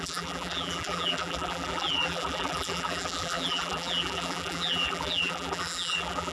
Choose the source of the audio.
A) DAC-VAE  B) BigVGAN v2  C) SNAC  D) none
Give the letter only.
B